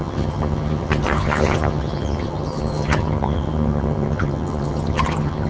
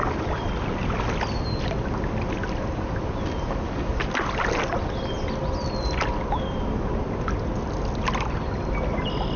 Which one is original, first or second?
second